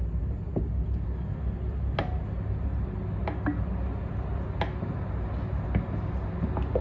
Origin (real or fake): real